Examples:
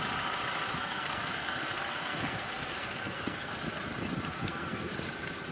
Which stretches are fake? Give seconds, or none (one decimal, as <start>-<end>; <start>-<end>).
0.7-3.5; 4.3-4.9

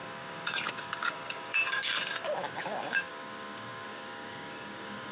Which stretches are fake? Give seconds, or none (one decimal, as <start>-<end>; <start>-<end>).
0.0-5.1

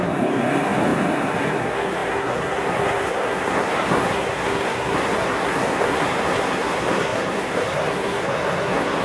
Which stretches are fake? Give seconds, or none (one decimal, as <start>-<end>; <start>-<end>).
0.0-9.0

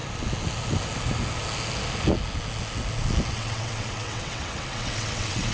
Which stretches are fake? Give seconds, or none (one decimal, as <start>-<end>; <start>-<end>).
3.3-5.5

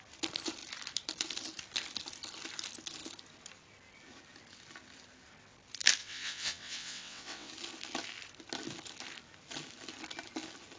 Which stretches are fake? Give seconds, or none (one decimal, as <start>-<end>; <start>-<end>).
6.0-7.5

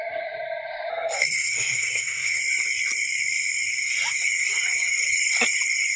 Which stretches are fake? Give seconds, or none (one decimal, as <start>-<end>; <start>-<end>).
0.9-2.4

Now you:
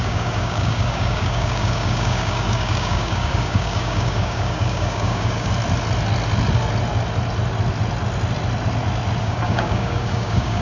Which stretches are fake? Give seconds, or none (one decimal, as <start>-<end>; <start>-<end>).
0.0-5.5; 9.2-10.6